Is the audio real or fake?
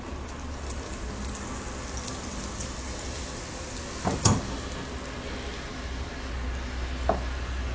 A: real